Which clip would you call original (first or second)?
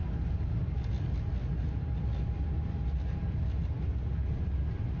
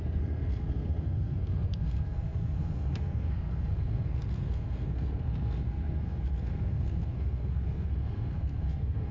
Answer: first